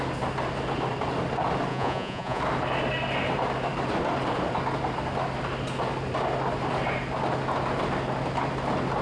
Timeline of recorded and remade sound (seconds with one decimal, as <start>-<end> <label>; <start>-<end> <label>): 0.0-1.7 recorded; 1.7-2.4 remade; 2.4-9.0 recorded

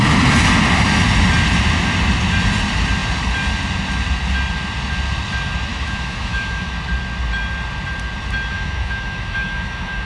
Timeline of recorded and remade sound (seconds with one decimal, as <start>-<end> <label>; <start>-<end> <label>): 0.0-5.7 recorded; 5.7-6.7 remade; 6.7-8.5 recorded; 8.5-10.1 remade

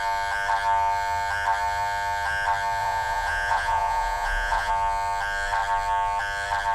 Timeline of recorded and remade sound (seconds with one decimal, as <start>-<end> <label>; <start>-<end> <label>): 0.0-2.8 recorded; 2.8-4.7 remade; 4.7-6.7 recorded

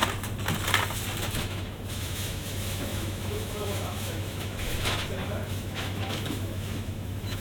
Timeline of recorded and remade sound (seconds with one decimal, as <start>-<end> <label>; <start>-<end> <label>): 0.0-1.2 recorded; 1.2-7.4 remade

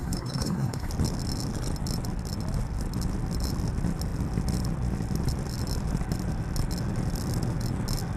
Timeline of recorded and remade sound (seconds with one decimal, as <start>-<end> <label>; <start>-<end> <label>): 0.0-0.9 remade; 0.9-8.2 recorded

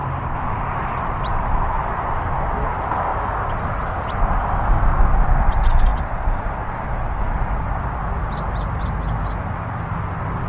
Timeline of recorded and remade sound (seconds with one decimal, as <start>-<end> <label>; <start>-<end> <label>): 0.0-1.9 remade; 1.9-3.1 recorded; 3.1-4.2 remade; 4.2-5.9 recorded; 5.9-7.2 remade; 7.2-10.5 recorded

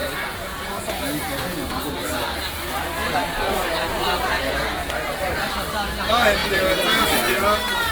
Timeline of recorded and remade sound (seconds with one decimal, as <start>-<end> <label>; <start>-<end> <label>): 0.0-1.0 remade; 1.0-6.4 recorded; 6.4-7.0 remade; 7.0-7.9 recorded

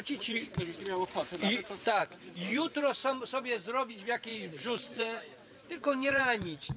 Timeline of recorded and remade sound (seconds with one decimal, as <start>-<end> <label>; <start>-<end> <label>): 0.0-3.0 remade; 3.0-3.9 recorded; 3.9-6.8 remade